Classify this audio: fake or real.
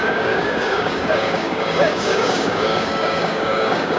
fake